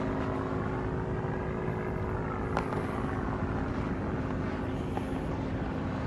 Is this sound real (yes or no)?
yes